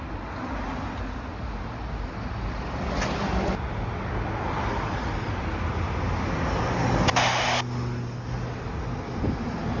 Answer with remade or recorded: recorded